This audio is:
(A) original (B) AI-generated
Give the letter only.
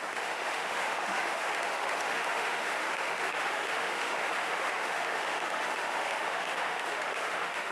B